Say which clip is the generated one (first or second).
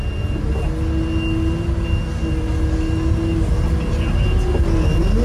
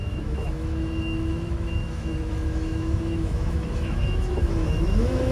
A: second